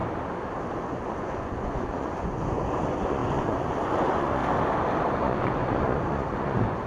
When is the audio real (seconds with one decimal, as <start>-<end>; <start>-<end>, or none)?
0.0-0.8; 4.4-5.1